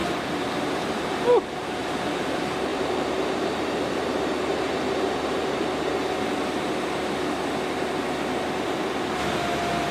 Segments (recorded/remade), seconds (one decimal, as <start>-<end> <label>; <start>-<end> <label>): 0.0-5.9 remade; 5.9-9.9 recorded